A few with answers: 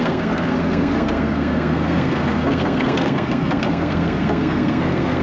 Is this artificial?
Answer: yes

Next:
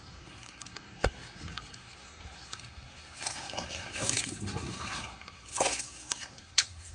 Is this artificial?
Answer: yes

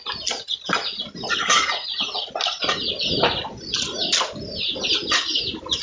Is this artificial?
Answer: no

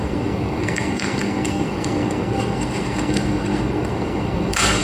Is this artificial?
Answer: yes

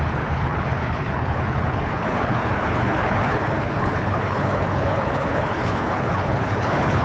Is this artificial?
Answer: yes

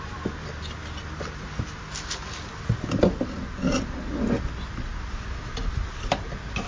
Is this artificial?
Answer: no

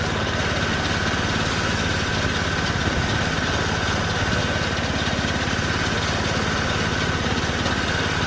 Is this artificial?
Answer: no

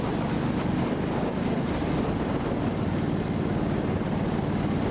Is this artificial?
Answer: no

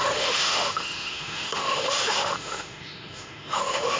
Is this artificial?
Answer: yes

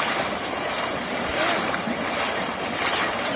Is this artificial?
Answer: no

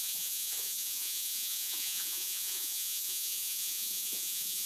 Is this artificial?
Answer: yes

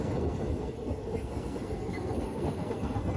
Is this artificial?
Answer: yes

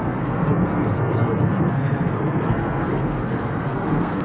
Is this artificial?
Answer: yes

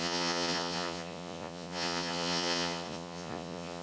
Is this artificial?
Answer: yes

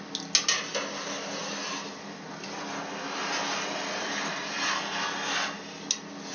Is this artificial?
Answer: no